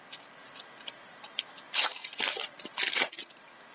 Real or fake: real